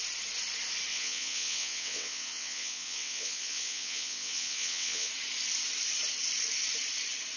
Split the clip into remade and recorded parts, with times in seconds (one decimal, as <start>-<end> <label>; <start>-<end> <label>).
0.0-0.9 recorded; 0.9-5.1 remade; 5.1-7.4 recorded